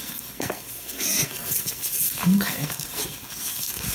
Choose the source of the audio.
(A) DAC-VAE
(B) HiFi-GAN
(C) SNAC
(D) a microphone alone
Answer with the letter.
C